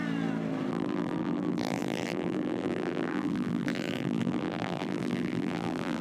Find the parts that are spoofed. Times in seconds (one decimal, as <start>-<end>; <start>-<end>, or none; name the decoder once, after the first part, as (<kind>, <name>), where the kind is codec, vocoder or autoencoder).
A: 0.7-6.0 (vocoder, BigVGAN v2)

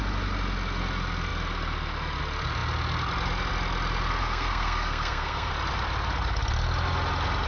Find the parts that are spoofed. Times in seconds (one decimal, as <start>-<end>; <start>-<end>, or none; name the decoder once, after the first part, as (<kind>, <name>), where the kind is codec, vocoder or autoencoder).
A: 4.2-5.5 (codec, SNAC)

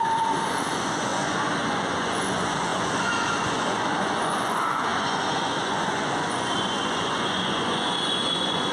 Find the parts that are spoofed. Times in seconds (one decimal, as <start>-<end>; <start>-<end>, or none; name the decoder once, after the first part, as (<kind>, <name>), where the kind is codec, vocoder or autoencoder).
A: 0.0-8.7 (vocoder, Vocos)

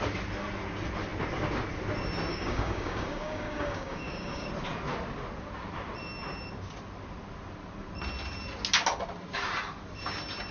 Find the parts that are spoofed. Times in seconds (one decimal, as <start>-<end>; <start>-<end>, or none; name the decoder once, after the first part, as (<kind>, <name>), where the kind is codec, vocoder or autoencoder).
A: 2.3-4.5 (codec, DAC)

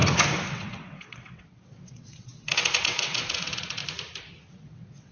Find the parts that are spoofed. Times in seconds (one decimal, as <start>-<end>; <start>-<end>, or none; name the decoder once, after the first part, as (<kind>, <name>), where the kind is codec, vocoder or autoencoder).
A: 0.5-3.8 (vocoder, WaveNeXt); 4.5-5.1

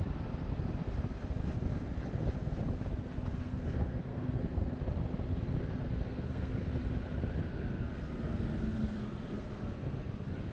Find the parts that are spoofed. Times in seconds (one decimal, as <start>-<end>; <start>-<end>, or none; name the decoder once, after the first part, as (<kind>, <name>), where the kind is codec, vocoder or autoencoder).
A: 3.3-4.7 (codec, SNAC); 5.6-6.6; 7.5-10.1

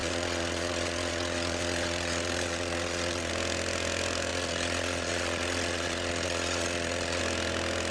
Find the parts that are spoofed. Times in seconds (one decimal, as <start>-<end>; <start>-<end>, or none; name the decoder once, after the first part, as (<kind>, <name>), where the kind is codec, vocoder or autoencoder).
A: 0.0-3.3 (vocoder, Vocos); 4.3-7.2